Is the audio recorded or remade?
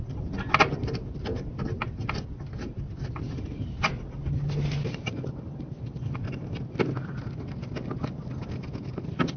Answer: recorded